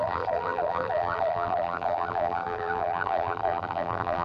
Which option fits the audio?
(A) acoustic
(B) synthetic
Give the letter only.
B